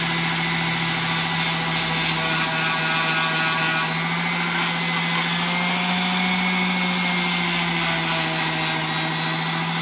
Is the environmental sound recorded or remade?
recorded